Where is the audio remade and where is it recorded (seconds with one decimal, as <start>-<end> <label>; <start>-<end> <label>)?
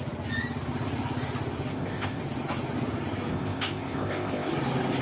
0.0-1.7 recorded; 1.7-2.2 remade; 2.2-3.3 recorded; 3.3-4.5 remade; 4.5-5.0 recorded